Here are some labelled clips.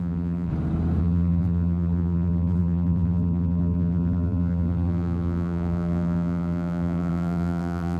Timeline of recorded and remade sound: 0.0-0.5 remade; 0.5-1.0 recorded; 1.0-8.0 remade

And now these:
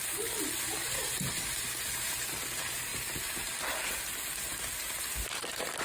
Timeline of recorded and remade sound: 0.0-2.9 remade; 2.9-5.0 recorded; 5.0-5.8 remade

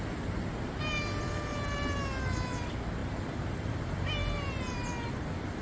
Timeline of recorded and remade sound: 0.0-3.0 recorded; 3.0-4.6 remade; 4.6-5.6 recorded

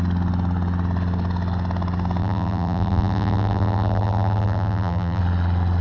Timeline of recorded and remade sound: 0.0-2.2 recorded; 2.2-5.2 remade; 5.2-5.8 recorded